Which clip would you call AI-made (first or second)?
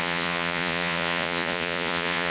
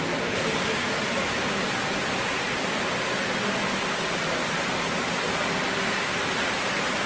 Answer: first